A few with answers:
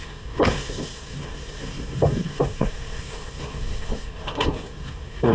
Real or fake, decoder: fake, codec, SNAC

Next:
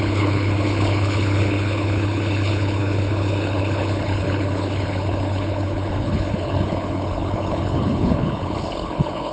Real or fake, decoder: fake, codec, HILCodec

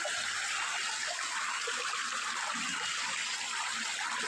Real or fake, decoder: real